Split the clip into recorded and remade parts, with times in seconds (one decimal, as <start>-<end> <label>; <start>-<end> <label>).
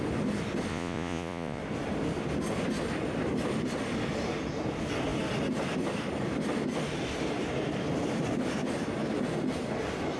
0.0-0.7 recorded; 0.7-1.6 remade; 1.6-10.2 recorded